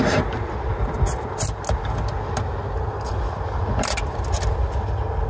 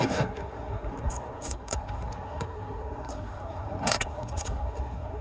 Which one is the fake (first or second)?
second